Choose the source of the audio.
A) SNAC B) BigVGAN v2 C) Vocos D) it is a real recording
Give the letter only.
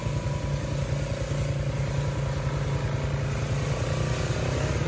D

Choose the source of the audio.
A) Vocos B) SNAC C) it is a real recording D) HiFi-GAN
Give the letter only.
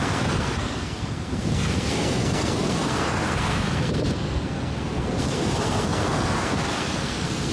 B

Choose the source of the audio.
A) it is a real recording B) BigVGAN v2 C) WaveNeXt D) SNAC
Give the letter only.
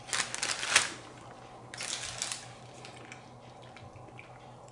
A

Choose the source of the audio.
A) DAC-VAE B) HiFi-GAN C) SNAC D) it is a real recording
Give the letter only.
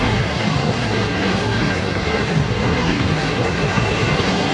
C